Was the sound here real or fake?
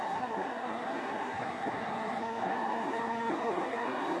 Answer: fake